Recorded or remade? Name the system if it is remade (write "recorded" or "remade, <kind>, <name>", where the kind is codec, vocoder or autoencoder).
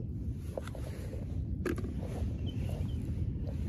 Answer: recorded